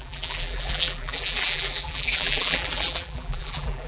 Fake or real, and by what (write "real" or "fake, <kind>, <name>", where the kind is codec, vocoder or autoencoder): fake, vocoder, BigVGAN v2